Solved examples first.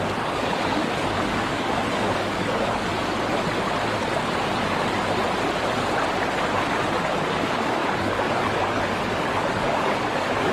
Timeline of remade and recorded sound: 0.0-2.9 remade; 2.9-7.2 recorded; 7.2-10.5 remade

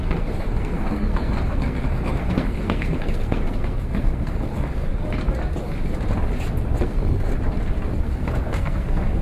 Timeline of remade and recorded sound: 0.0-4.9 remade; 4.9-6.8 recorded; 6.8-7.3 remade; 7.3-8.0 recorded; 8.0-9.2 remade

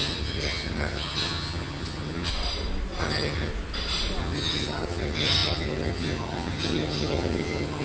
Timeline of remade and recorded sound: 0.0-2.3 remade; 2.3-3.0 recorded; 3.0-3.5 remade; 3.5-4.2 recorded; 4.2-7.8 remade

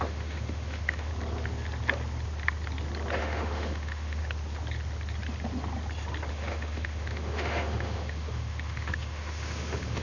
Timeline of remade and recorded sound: 0.0-1.1 remade; 1.1-3.2 recorded; 3.2-4.2 remade; 4.2-6.3 recorded; 6.3-10.0 remade

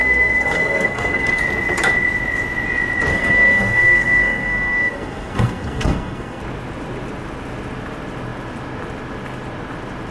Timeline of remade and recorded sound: 0.0-1.4 remade; 1.4-3.1 recorded; 3.1-6.4 remade; 6.4-10.1 recorded

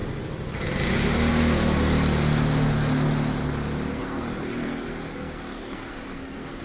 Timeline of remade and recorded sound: 0.0-3.9 recorded; 3.9-6.6 remade

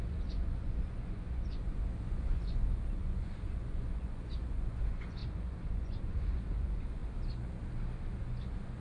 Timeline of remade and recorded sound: 0.0-7.0 remade; 7.0-8.2 recorded; 8.2-8.8 remade